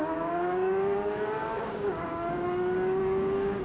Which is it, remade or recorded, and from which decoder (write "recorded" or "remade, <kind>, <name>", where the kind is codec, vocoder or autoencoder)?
remade, codec, DAC